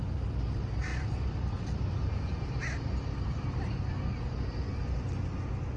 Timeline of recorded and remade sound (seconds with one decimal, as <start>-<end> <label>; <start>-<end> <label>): 0.0-0.9 recorded; 0.9-3.8 remade; 3.8-5.8 recorded